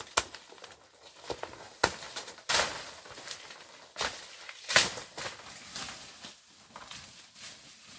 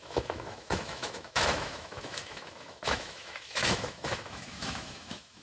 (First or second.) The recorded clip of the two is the first